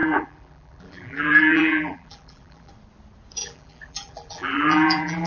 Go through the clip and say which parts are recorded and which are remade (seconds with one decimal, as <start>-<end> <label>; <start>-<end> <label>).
0.0-2.7 remade; 2.7-3.4 recorded; 3.4-5.3 remade